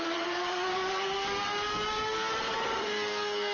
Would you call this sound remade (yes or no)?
yes